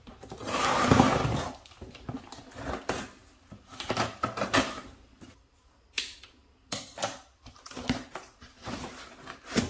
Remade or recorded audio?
remade